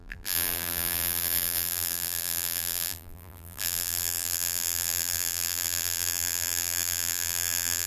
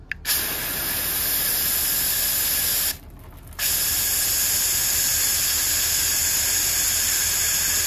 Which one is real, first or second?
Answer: second